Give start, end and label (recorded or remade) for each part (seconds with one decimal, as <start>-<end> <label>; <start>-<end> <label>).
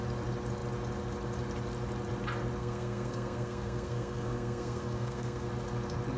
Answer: 0.0-2.6 recorded; 2.6-5.5 remade; 5.5-6.2 recorded